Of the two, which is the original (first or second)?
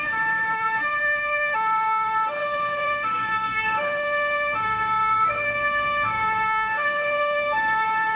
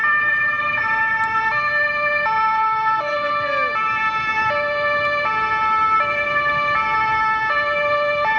second